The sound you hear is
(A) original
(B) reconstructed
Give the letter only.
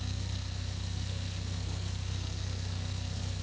B